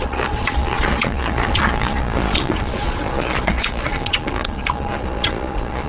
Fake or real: fake